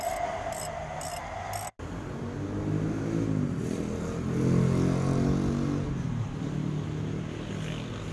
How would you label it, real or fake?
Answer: real